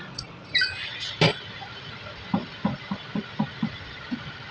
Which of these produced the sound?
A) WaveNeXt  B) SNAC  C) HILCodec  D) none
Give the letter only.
D